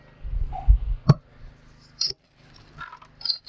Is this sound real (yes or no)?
yes